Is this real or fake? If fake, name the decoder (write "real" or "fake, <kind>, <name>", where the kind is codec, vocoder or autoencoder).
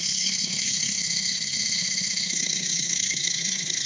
fake, codec, SNAC